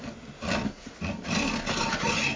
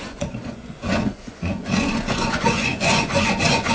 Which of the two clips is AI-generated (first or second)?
second